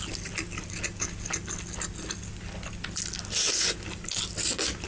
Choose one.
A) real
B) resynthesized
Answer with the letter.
A